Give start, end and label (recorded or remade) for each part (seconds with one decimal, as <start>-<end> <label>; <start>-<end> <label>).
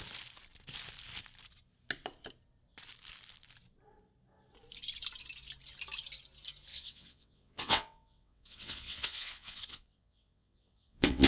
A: 0.0-6.7 recorded; 6.7-11.3 remade